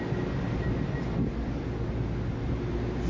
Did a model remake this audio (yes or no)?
no